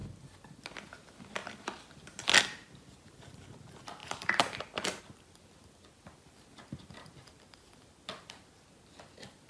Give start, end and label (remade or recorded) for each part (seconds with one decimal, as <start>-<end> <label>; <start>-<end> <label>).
0.0-4.0 recorded; 4.0-5.0 remade; 5.0-9.5 recorded